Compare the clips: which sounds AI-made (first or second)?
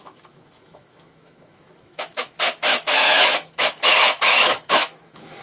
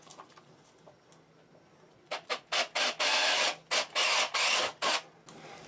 first